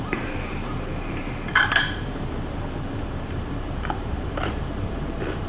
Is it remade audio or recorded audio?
remade